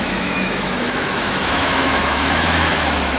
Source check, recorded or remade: remade